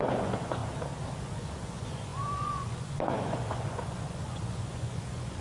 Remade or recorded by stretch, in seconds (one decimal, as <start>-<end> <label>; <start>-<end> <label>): 0.0-0.6 remade; 0.6-1.2 recorded; 1.2-5.4 remade